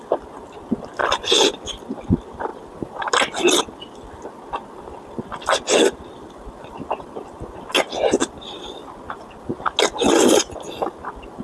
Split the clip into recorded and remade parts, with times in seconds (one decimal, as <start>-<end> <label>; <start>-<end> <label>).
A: 0.0-1.0 recorded; 1.0-1.8 remade; 1.8-8.2 recorded; 8.2-9.3 remade; 9.3-11.4 recorded